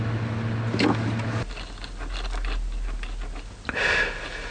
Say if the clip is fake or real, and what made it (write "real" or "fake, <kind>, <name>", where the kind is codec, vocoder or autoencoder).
real